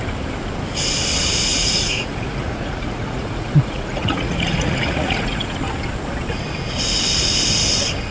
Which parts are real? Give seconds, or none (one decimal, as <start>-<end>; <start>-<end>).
0.0-1.5; 5.6-8.1